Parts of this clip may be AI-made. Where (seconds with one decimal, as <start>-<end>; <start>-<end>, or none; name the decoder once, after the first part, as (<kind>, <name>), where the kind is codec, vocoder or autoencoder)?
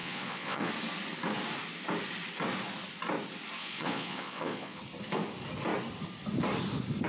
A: 0.0-0.7 (vocoder, Vocos); 3.6-4.8